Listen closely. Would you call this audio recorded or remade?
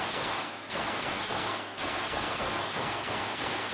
remade